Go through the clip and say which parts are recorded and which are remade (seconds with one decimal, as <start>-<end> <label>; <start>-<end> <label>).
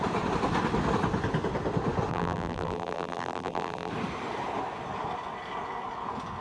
0.0-2.1 recorded; 2.1-3.9 remade; 3.9-6.4 recorded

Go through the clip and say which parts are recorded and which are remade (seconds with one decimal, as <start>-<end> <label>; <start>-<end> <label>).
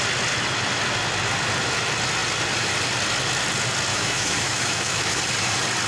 0.0-3.9 recorded; 3.9-5.2 remade; 5.2-5.9 recorded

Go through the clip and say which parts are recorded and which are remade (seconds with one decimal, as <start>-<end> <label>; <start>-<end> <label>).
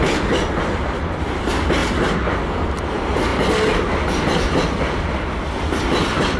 0.0-6.4 recorded